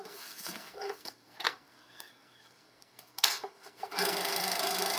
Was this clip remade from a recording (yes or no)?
yes